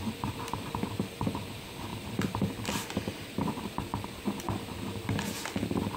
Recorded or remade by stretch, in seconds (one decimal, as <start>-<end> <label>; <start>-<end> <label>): 0.0-1.9 recorded; 1.9-5.0 remade; 5.0-6.0 recorded